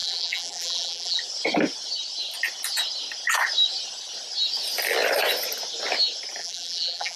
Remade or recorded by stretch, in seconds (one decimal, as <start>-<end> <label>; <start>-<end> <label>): 0.0-1.2 remade; 1.2-6.4 recorded; 6.4-7.2 remade